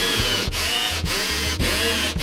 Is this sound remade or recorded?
remade